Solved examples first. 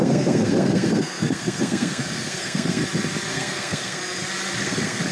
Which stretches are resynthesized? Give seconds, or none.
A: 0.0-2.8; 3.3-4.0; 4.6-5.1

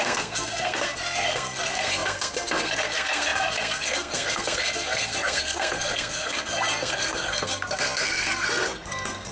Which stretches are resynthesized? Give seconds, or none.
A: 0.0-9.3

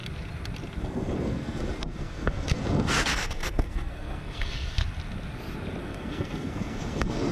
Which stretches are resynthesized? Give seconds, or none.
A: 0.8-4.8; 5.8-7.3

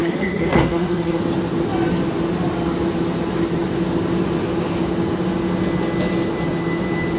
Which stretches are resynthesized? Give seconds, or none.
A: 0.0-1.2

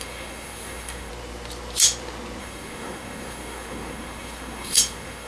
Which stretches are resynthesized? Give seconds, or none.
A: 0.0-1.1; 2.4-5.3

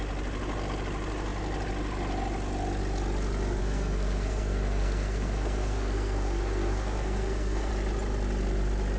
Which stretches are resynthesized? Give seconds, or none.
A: 3.6-7.7

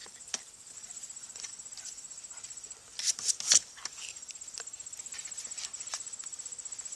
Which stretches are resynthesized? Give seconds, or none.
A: none

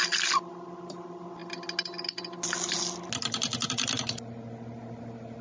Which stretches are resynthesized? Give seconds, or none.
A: none